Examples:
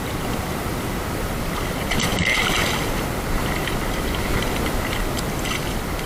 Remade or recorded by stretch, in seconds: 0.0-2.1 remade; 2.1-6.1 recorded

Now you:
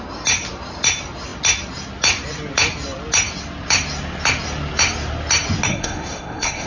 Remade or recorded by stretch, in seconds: 0.0-5.7 recorded; 5.7-6.7 remade

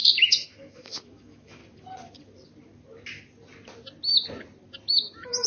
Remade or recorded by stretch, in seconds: 0.0-1.6 remade; 1.6-4.9 recorded; 4.9-5.5 remade

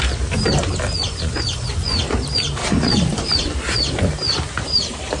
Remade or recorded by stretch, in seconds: 0.0-1.0 recorded; 1.0-2.0 remade; 2.0-2.6 recorded; 2.6-3.6 remade; 3.6-5.2 recorded

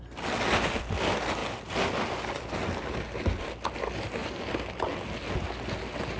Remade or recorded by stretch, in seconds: 0.0-6.2 recorded